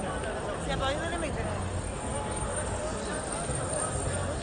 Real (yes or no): yes